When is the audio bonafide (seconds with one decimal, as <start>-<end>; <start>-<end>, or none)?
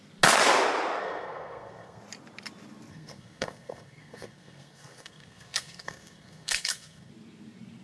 0.0-1.0; 2.0-2.9; 7.1-7.8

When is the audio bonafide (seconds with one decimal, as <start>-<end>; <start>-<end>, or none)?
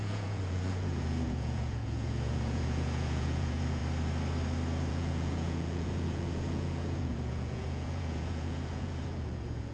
3.8-4.9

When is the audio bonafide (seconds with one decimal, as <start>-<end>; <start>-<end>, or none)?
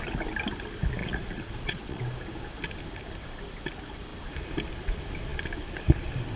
0.0-1.0; 2.0-6.4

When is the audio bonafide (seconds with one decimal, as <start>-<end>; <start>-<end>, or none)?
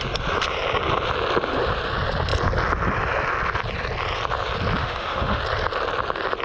0.0-4.8; 5.4-6.4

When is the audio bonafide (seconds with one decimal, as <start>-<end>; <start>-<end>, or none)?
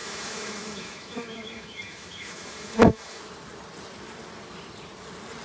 3.2-5.4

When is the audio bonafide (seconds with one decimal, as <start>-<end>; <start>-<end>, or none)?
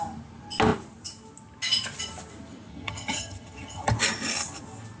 0.0-2.7; 3.9-5.0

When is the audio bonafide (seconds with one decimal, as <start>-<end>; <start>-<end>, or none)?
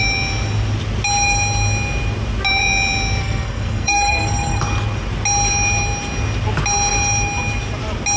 0.0-3.2; 4.6-8.2